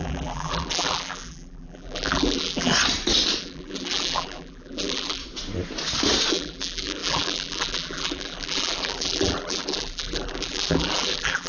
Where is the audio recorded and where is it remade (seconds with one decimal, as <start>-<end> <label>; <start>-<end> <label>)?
0.0-2.7 remade; 2.7-3.4 recorded; 3.4-5.2 remade; 5.2-6.3 recorded; 6.3-11.5 remade